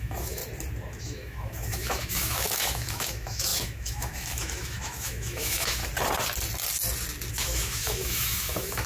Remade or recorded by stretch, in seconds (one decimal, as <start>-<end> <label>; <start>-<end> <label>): 0.0-0.4 remade; 0.4-1.0 recorded; 1.0-5.8 remade; 5.8-7.3 recorded; 7.3-8.9 remade